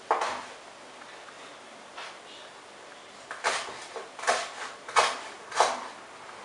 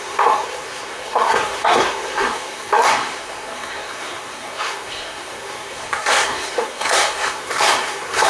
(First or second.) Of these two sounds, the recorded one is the first